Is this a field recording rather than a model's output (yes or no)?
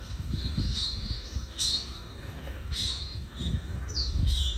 no